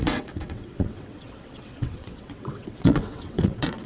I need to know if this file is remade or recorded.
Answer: remade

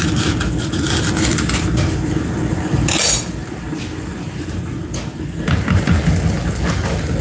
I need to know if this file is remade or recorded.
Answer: recorded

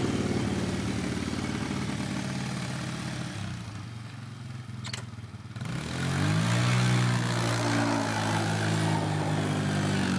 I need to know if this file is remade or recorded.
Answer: recorded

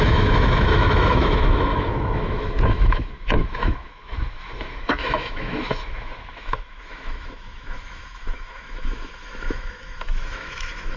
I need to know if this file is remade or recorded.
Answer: remade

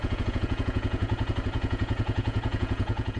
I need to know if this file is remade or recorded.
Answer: remade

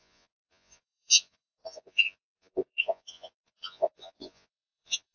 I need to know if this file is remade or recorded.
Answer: remade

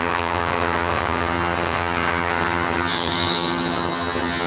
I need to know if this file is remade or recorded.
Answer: remade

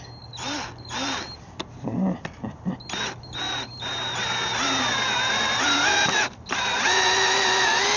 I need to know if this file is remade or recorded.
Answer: recorded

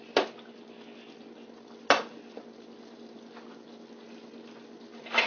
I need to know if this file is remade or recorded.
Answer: recorded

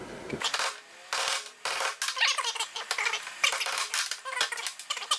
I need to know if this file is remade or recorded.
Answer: recorded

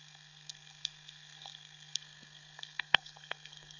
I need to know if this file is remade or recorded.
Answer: remade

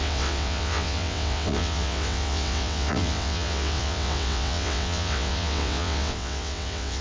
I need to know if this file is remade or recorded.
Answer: remade